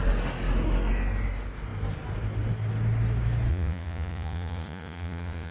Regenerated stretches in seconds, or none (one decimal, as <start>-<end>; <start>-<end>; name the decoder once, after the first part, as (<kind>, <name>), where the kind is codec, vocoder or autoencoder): 3.5-5.5 (vocoder, Vocos)